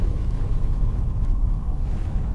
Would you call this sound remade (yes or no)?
yes